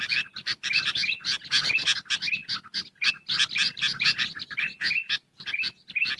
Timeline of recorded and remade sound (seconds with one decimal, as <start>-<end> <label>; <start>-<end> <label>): 0.0-6.2 recorded